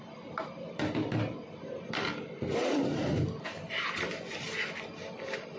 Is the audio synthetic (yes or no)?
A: no